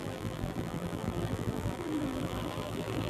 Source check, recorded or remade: remade